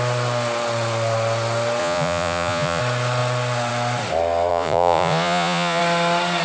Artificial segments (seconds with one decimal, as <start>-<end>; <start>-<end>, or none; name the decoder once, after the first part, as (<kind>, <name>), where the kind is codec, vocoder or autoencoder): 1.8-2.8 (vocoder, Vocos); 4.5-5.8